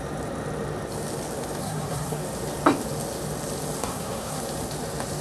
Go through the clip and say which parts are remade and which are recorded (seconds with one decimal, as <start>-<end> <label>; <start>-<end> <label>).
0.0-1.6 recorded; 1.6-2.2 remade; 2.2-3.8 recorded; 3.8-4.4 remade; 4.4-5.2 recorded